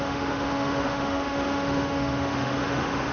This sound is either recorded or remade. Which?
remade